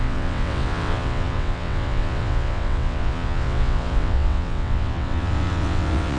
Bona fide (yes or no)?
no